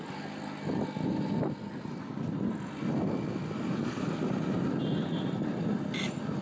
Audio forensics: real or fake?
real